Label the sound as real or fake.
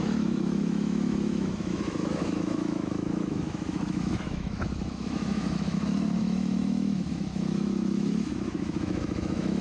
fake